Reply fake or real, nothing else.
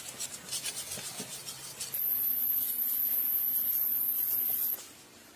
real